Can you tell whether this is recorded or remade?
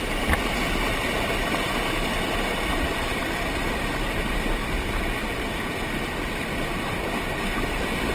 recorded